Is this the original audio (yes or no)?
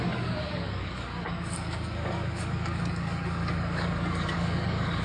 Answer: no